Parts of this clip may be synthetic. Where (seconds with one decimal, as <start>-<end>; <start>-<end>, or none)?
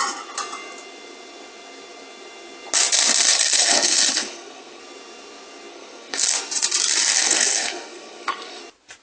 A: 3.2-4.8; 5.7-6.3; 7.1-8.6